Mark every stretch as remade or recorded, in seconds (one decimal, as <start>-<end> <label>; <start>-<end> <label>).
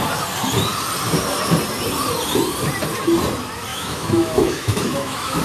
0.0-3.7 recorded; 3.7-5.4 remade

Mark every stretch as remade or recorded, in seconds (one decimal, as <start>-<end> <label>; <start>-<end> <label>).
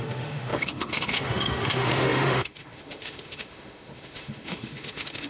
0.0-5.3 remade